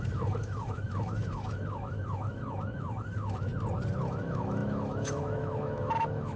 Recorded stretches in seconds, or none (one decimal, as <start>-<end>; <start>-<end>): 3.5-4.1